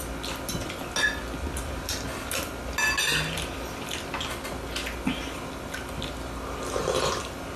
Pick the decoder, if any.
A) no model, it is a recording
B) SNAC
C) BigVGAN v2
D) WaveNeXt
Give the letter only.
A